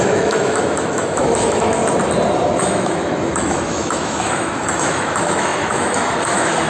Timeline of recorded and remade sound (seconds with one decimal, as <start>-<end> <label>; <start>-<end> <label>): 0.0-1.8 remade; 1.8-2.6 recorded; 2.6-6.7 remade